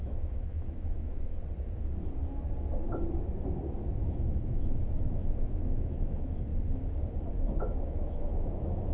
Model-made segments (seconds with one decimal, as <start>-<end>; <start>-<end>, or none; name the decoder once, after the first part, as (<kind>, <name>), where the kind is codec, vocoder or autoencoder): 0.0-1.3 (autoencoder, DAC-VAE); 4.0-6.5; 7.3-8.9